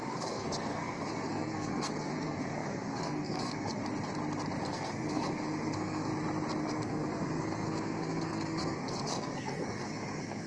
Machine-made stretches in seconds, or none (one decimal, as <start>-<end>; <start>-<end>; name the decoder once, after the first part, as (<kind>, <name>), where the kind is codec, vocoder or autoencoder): 0.0-3.8 (codec, SNAC); 4.6-6.1; 6.6-10.5